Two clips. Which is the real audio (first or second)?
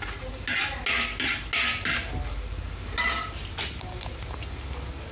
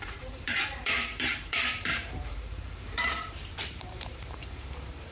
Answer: first